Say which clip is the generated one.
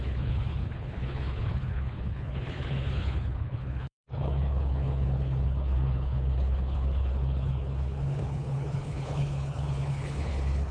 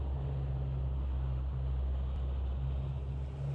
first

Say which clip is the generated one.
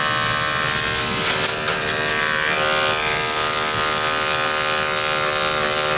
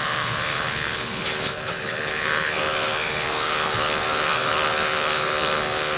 second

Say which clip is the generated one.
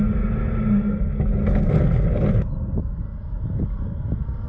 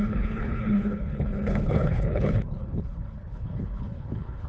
second